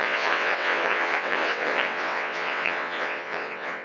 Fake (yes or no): yes